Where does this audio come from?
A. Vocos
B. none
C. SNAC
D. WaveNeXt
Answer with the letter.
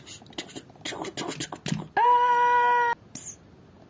B